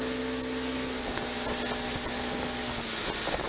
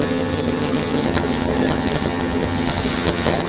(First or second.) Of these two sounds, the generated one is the second